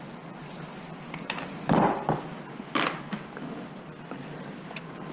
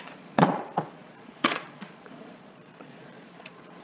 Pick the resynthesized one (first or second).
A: second